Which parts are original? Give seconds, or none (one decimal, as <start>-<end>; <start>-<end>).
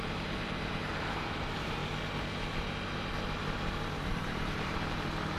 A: 1.8-4.1